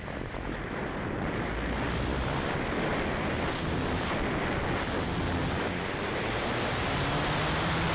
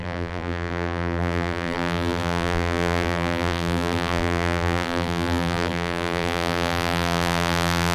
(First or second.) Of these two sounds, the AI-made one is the second